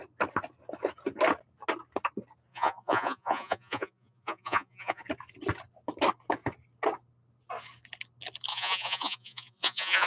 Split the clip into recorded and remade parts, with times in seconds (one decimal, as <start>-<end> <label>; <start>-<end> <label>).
0.0-2.5 recorded; 2.5-5.0 remade; 5.0-8.5 recorded; 8.5-10.1 remade